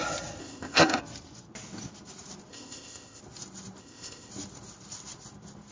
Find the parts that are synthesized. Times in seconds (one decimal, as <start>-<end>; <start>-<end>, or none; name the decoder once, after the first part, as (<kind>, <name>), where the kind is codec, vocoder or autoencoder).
0.4-1.0 (codec, ZipCodec); 2.5-3.2; 3.8-4.3